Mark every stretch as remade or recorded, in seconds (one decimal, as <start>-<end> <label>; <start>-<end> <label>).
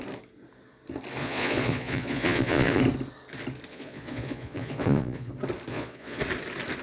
0.0-1.2 recorded; 1.2-2.8 remade; 2.8-3.7 recorded; 3.7-5.3 remade; 5.3-5.7 recorded; 5.7-6.2 remade; 6.2-6.8 recorded